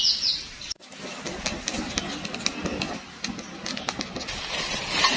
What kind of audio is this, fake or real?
real